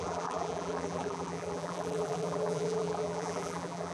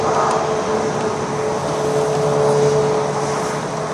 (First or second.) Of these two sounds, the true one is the second